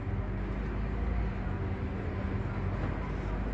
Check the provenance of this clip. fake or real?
real